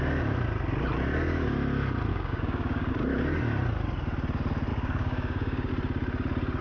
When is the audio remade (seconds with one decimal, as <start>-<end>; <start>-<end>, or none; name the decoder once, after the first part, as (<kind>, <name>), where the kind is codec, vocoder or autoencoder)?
2.1-2.9 (codec, DAC); 4.7-5.7